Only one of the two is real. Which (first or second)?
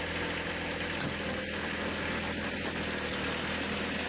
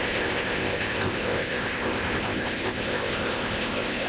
first